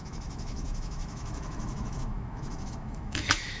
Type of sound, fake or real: fake